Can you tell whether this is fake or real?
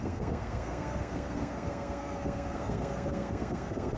fake